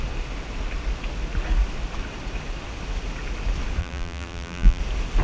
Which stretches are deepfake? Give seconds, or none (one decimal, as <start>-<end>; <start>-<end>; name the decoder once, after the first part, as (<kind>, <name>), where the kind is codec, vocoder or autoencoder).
3.8-4.8 (vocoder, BigVGAN v2)